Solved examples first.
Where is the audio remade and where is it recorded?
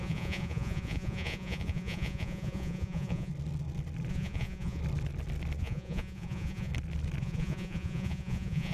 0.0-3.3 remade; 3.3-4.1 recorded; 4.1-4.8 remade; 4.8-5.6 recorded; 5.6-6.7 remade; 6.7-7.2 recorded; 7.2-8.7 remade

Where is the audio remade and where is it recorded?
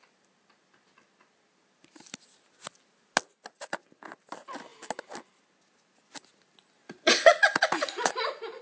0.0-3.5 recorded; 3.5-4.2 remade; 4.2-6.8 recorded; 6.8-8.1 remade; 8.1-8.6 recorded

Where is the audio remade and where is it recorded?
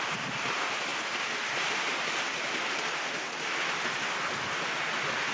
0.0-5.3 recorded